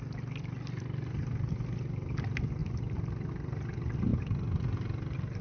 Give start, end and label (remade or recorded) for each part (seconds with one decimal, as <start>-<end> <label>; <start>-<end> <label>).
0.0-2.6 recorded; 2.6-3.3 remade; 3.3-4.1 recorded; 4.1-5.4 remade

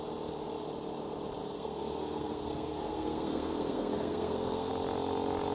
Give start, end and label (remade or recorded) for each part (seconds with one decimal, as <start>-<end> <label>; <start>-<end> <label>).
0.0-1.4 recorded; 1.4-4.7 remade; 4.7-5.5 recorded

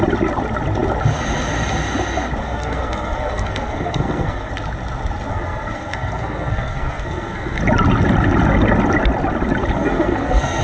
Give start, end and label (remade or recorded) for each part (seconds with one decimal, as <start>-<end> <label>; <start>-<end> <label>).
0.0-2.4 recorded; 2.4-4.5 remade; 4.5-5.3 recorded; 5.3-7.6 remade; 7.6-9.8 recorded; 9.8-10.6 remade